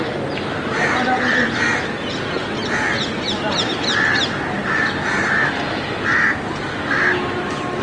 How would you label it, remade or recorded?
recorded